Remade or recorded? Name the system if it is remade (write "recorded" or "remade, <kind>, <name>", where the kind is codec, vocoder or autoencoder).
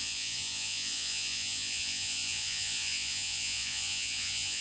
remade, vocoder, Vocos